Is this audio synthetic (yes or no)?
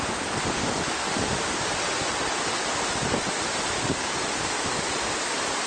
no